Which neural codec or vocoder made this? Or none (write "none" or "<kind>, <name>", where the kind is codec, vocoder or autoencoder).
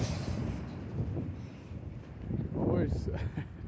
vocoder, BigVGAN v2